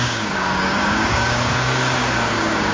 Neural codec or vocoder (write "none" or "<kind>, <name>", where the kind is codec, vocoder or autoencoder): codec, DAC